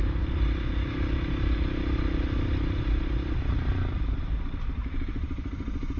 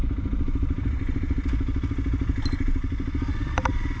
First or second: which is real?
second